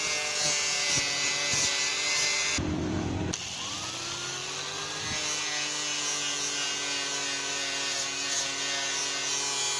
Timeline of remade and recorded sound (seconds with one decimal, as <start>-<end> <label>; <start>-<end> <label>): 0.0-1.9 recorded; 1.9-3.8 remade; 3.8-9.8 recorded